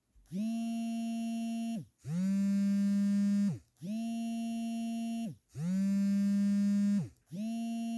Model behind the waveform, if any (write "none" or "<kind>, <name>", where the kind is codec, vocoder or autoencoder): none